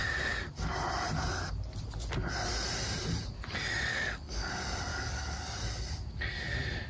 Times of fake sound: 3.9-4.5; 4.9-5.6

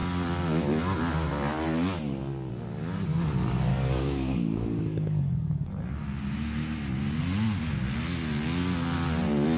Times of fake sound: 3.7-5.9